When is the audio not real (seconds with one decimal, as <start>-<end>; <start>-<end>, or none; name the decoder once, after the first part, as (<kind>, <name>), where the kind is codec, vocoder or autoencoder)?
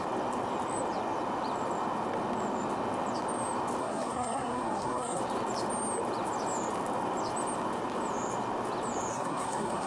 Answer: 3.8-5.2 (codec, SNAC); 9.1-9.9